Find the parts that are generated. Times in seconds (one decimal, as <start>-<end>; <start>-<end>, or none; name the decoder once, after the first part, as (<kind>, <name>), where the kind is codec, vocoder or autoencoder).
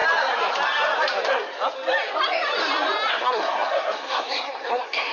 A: 3.1-5.1 (codec, SNAC)